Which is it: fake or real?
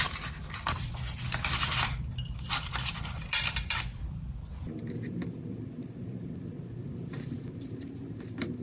fake